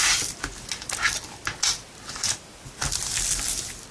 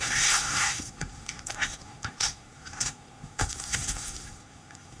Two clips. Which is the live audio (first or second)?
first